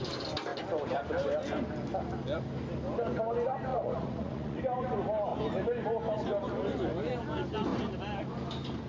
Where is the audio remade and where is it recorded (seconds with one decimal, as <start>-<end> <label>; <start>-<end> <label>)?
0.0-3.7 recorded; 3.7-4.6 remade; 4.6-8.9 recorded